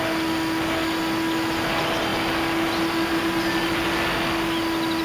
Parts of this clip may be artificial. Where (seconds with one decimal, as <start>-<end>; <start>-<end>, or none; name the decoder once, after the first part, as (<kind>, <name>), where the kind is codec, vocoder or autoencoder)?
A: none